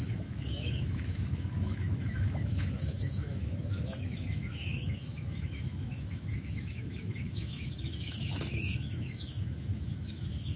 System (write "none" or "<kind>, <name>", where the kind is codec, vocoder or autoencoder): autoencoder, DAC-VAE